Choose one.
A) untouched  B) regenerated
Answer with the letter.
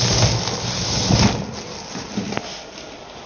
A